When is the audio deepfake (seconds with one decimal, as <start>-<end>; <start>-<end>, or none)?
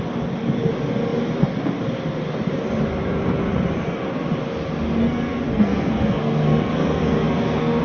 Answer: 5.0-7.8